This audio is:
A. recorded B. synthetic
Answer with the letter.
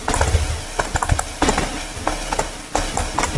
A